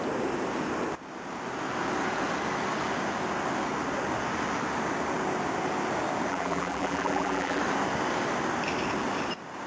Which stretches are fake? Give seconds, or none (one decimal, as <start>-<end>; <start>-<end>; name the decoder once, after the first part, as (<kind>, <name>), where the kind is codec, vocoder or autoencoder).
6.3-7.6 (vocoder, BigVGAN v2)